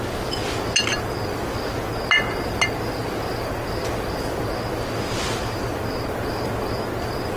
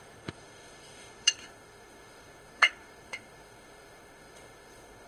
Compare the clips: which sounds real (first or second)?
first